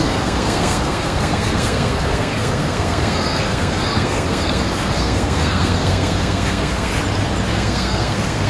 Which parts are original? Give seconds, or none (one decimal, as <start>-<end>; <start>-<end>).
6.9-7.5